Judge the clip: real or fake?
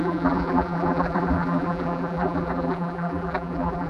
fake